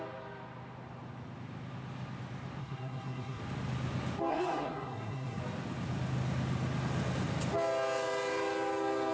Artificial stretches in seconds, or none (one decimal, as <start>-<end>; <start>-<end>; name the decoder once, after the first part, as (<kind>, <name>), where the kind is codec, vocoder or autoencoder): 2.6-3.4 (codec, SNAC); 4.3-5.4